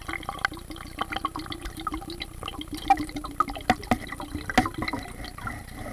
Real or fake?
real